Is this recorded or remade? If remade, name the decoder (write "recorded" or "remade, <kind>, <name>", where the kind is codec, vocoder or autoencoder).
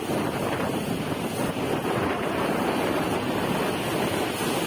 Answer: recorded